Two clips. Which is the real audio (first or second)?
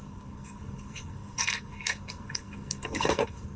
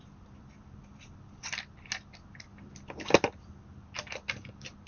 second